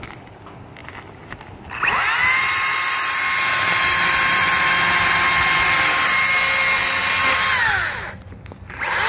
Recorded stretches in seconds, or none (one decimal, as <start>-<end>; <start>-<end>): 0.0-9.1